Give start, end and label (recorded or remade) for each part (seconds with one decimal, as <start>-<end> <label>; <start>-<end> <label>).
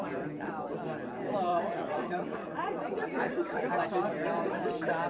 0.0-1.5 recorded; 1.5-3.7 remade; 3.7-5.1 recorded